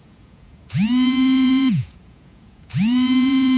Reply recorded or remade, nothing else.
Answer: remade